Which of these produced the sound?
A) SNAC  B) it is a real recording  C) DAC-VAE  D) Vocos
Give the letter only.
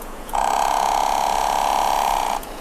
D